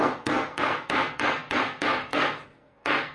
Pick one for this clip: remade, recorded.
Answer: remade